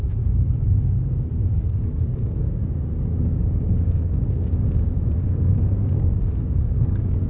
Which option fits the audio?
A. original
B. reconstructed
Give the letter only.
B